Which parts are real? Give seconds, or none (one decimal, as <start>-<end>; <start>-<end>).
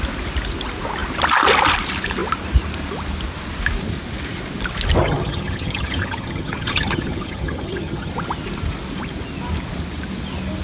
0.0-5.0; 8.1-10.6